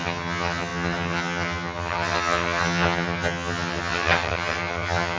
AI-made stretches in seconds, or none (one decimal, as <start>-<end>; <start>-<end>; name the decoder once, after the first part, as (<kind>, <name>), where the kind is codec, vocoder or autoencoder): 0.0-5.2 (vocoder, HiFi-GAN)